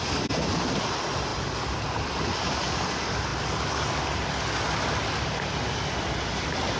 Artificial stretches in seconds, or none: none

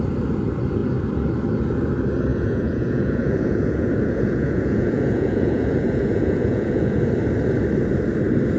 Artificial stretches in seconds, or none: 2.3-7.0 (vocoder, Vocos)